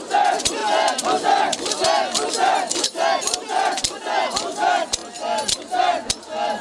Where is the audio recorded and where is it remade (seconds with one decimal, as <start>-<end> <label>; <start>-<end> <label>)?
0.0-6.6 recorded